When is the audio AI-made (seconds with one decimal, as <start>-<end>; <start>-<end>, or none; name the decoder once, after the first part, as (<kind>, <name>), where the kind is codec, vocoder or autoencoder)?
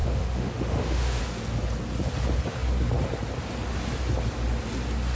0.0-1.2 (autoencoder, DAC-VAE)